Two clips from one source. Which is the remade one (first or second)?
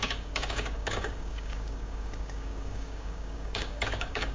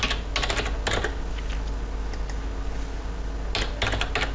first